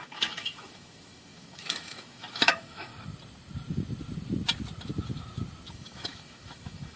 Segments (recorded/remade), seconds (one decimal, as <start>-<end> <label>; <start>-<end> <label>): 0.0-2.9 remade; 2.9-5.7 recorded; 5.7-7.0 remade